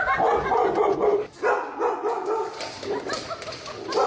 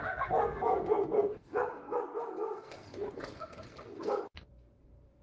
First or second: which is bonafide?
first